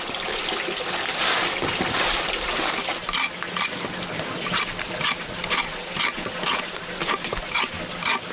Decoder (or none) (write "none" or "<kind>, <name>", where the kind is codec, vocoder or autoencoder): none